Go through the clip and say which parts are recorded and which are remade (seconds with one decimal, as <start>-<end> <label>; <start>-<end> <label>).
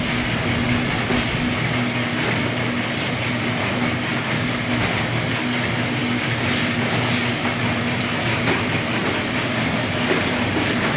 0.0-11.0 recorded